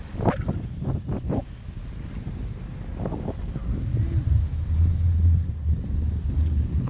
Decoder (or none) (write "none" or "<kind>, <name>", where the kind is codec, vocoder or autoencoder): none